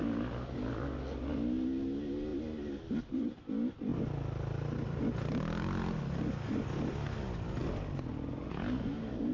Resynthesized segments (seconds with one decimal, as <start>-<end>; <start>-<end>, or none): none